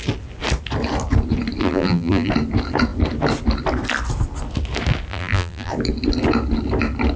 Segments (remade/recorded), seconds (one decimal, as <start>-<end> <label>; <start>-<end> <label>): 0.0-1.6 recorded; 1.6-2.3 remade; 2.3-5.1 recorded; 5.1-5.7 remade; 5.7-7.2 recorded